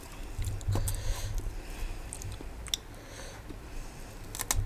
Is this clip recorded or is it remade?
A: recorded